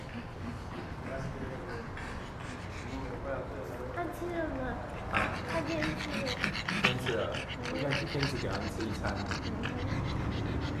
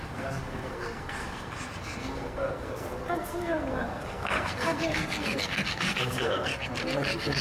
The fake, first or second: second